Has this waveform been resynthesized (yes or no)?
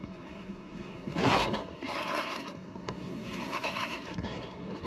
yes